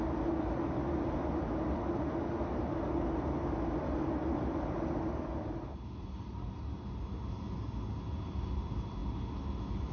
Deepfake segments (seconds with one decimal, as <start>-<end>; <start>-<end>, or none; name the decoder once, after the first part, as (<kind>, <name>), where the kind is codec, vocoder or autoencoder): none